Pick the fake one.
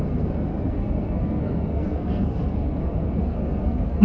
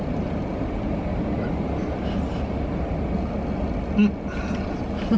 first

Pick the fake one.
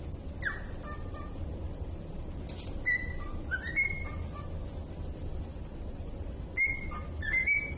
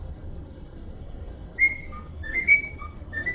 second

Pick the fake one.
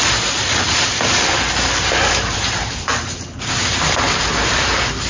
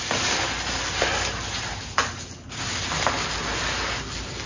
first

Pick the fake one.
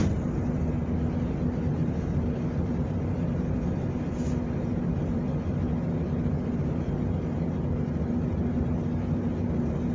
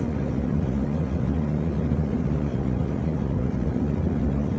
second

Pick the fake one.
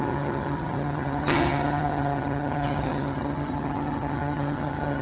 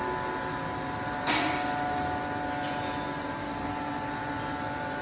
first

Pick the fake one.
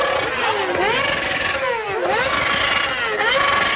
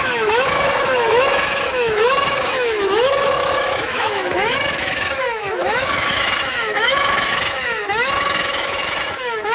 second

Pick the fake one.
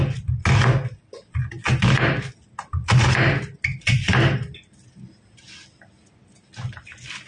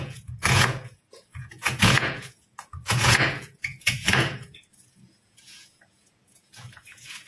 second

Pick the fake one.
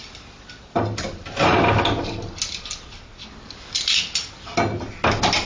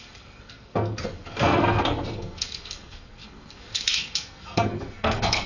second